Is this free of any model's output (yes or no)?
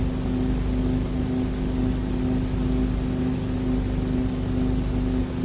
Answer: yes